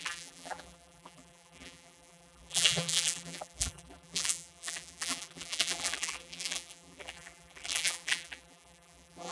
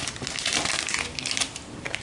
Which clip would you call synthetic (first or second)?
first